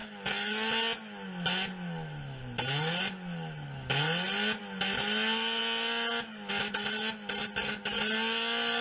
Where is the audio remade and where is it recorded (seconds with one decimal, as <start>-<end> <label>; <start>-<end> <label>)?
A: 0.0-8.8 recorded